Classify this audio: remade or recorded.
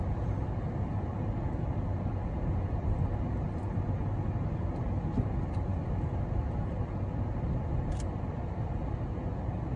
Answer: recorded